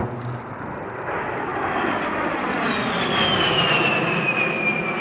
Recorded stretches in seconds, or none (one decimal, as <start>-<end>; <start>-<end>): 0.0-5.0